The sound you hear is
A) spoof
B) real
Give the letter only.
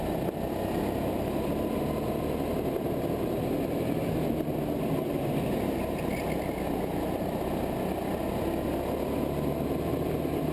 B